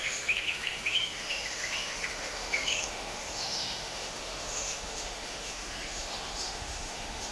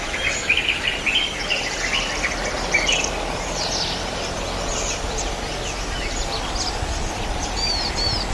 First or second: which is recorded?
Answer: second